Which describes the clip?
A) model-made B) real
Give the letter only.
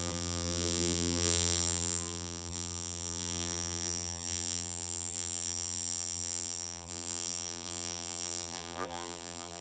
A